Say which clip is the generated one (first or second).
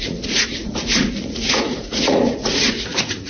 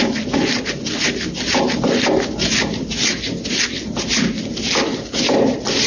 first